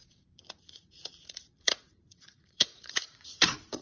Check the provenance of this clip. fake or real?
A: fake